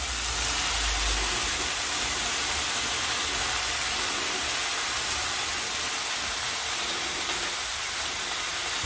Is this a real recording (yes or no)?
yes